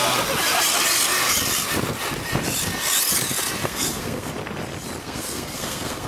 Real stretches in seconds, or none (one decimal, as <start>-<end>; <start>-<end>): 0.0-3.6; 4.3-5.0